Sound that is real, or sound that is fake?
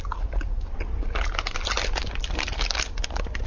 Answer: real